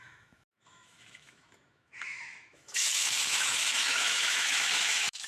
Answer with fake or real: fake